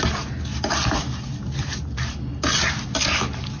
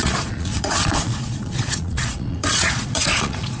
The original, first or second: first